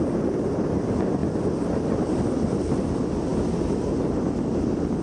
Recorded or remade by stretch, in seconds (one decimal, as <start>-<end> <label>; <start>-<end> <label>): 0.0-5.0 recorded